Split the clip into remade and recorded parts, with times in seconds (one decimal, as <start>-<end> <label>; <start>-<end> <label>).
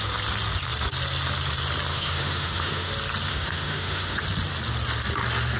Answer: 0.0-1.9 recorded; 1.9-2.9 remade; 2.9-3.3 recorded; 3.3-4.2 remade; 4.2-5.6 recorded